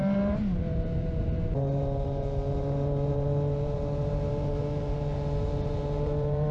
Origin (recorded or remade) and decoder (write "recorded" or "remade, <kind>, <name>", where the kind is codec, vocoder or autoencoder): remade, vocoder, BigVGAN v2